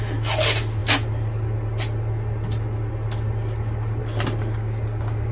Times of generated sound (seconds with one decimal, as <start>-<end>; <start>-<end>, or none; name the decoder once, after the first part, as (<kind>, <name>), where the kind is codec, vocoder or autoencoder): 4.6-5.3 (codec, DAC)